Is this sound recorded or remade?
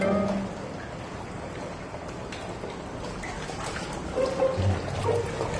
recorded